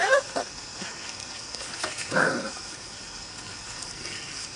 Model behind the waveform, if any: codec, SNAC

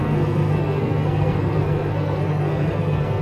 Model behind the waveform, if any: codec, SNAC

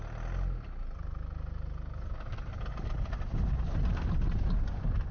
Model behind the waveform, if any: none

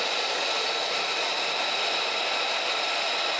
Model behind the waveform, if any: none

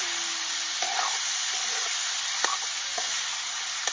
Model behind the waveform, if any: none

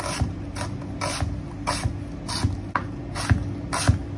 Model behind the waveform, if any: none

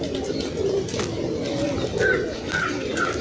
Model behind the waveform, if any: none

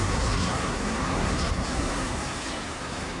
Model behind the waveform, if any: codec, SNAC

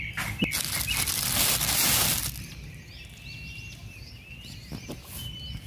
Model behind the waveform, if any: none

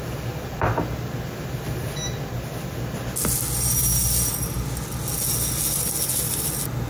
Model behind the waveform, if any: none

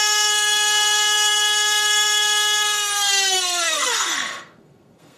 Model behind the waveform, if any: codec, SNAC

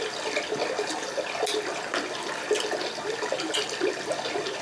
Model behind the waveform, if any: none